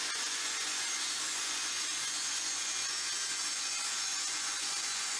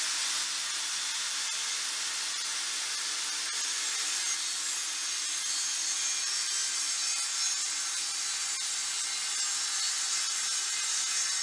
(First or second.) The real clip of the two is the second